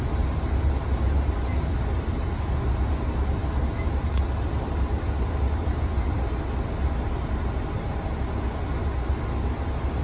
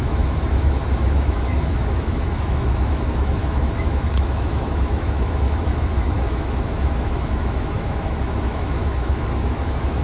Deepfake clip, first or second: second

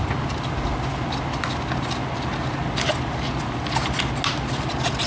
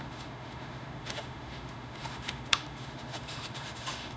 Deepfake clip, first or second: second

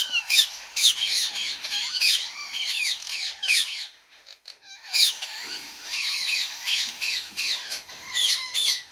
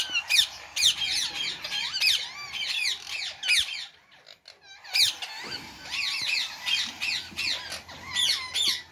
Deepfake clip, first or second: first